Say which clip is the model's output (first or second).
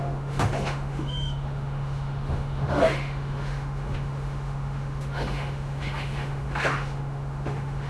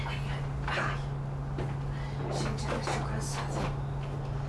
first